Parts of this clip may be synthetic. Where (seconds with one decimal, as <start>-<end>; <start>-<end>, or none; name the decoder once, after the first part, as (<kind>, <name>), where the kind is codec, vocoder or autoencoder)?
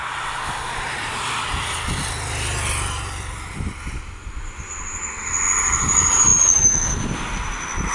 none